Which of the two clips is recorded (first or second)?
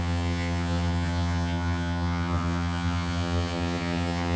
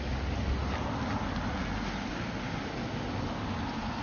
second